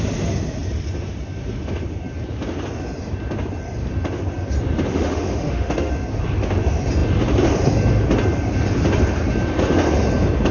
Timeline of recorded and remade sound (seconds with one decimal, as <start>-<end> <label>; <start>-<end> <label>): 0.0-4.9 recorded; 4.9-5.9 remade; 5.9-10.5 recorded